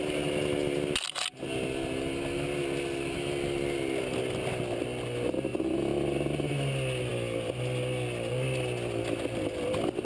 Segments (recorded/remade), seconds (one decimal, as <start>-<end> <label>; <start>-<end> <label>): 0.0-10.0 recorded

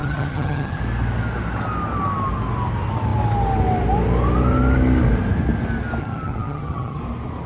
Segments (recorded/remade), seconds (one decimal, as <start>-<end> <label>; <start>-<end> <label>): 0.0-0.8 remade; 0.8-6.0 recorded; 6.0-7.0 remade; 7.0-7.5 recorded

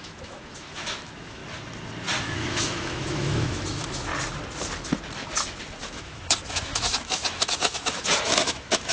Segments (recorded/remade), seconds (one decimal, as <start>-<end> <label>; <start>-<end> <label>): 0.0-1.4 remade; 1.4-2.2 recorded; 2.2-4.1 remade; 4.1-5.8 recorded; 5.8-8.9 remade

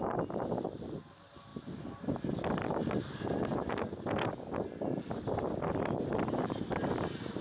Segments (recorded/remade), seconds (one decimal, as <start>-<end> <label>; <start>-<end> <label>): 0.0-7.4 recorded

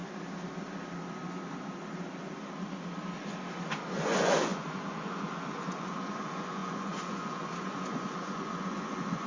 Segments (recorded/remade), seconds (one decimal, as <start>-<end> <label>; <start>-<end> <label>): 0.0-3.9 recorded; 3.9-9.3 remade

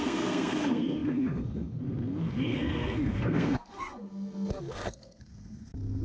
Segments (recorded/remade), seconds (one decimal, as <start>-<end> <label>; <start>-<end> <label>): 0.0-6.0 remade